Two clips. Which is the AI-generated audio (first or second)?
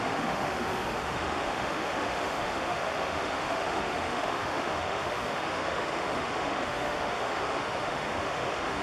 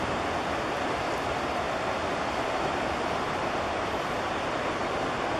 first